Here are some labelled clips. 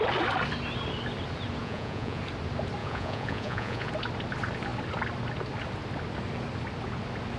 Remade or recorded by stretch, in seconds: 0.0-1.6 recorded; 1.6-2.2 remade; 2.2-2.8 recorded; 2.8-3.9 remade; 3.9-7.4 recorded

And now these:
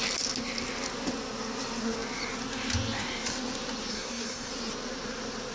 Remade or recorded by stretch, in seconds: 0.0-3.9 recorded; 3.9-4.5 remade; 4.5-5.5 recorded

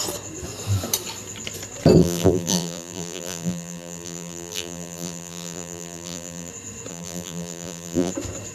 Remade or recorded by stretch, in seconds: 0.0-2.0 recorded; 2.0-6.5 remade; 6.5-6.9 recorded; 6.9-8.1 remade; 8.1-8.5 recorded

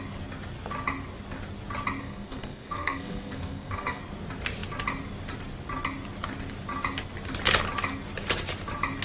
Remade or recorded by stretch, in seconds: 0.0-2.0 recorded; 2.0-4.0 remade; 4.0-9.0 recorded

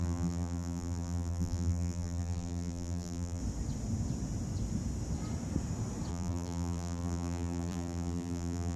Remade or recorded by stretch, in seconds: 0.0-3.4 remade; 3.4-6.1 recorded; 6.1-8.8 remade

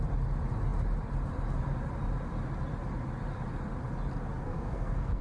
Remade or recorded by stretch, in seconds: 0.0-4.4 recorded; 4.4-5.2 remade